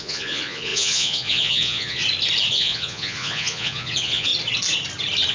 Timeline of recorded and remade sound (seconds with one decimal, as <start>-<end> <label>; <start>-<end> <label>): 0.0-2.0 remade; 2.0-2.5 recorded; 2.5-4.3 remade; 4.3-5.3 recorded